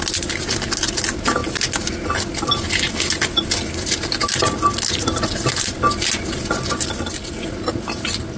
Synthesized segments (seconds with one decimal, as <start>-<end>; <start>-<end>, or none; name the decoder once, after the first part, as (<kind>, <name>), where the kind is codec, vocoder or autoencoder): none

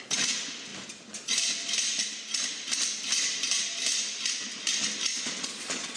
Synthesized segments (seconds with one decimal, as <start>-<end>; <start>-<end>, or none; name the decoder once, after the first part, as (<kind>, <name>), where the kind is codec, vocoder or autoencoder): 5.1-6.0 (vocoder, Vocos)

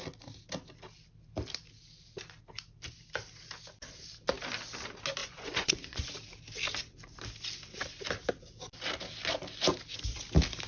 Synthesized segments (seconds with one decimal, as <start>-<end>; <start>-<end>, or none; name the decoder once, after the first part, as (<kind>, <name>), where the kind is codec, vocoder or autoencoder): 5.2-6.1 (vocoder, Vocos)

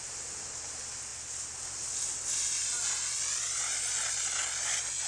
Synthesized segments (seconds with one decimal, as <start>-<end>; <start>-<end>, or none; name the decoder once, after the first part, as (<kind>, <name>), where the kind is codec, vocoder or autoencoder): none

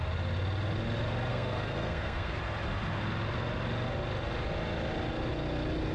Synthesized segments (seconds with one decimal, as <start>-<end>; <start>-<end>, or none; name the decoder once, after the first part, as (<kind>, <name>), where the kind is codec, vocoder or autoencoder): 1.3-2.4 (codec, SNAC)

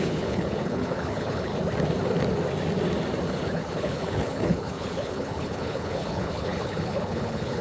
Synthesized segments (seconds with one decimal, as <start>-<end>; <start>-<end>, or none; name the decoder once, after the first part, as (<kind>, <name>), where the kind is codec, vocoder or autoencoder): 0.0-1.5 (codec, HILCodec); 3.4-7.6

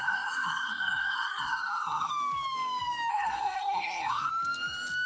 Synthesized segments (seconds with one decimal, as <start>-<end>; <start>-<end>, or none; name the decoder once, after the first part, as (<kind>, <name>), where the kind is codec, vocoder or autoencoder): 0.0-2.1 (codec, SNAC); 3.1-4.3

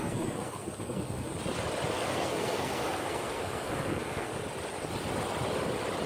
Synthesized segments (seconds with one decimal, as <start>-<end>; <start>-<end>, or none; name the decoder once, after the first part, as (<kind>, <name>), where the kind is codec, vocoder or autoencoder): 0.0-1.3 (codec, SNAC); 1.9-4.3